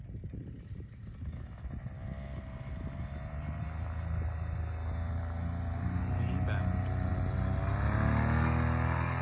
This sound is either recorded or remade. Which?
recorded